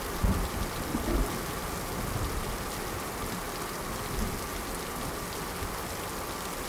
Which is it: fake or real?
real